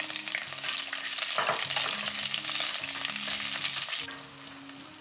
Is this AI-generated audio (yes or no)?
no